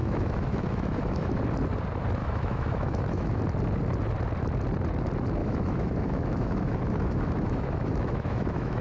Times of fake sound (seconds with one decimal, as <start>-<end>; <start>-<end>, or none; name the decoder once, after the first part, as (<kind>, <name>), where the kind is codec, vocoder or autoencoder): 0.0-1.4 (autoencoder, DAC-VAE); 2.2-3.4; 5.4-8.8